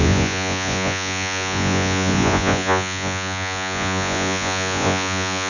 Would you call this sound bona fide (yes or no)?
no